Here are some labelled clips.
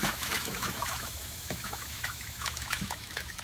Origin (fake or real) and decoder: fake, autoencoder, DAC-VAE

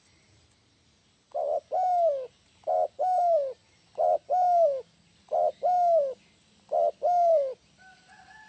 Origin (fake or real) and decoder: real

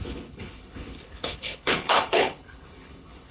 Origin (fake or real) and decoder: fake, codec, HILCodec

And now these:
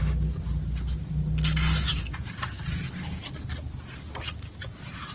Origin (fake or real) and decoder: real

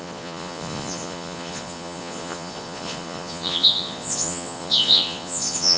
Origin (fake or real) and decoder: fake, vocoder, Vocos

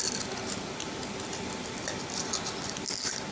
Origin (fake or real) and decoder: real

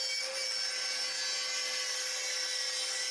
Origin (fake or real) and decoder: real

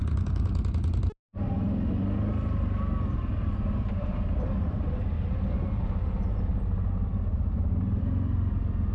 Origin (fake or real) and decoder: real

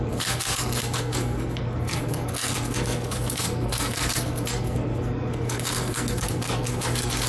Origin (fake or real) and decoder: fake, codec, SNAC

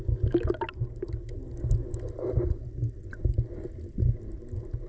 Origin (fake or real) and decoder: real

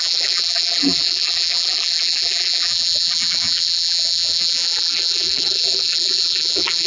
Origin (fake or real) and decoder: fake, vocoder, BigVGAN v2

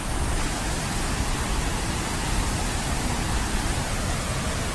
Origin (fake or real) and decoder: real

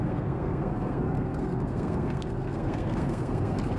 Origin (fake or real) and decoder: fake, codec, SNAC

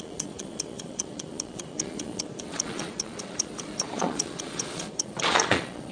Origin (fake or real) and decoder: fake, vocoder, Vocos